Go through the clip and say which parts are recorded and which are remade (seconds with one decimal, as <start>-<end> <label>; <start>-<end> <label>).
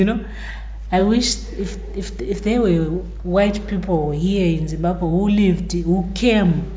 0.0-6.1 recorded; 6.1-6.8 remade